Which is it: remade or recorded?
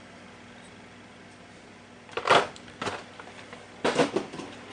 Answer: recorded